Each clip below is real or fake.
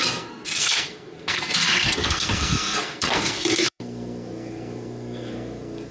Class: fake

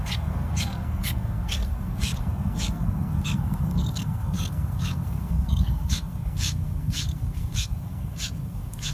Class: fake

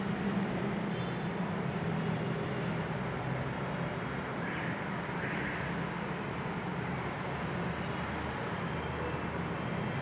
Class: real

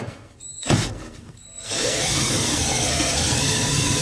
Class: fake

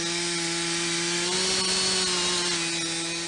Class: real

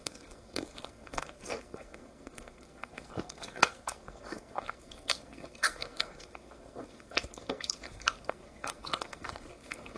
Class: fake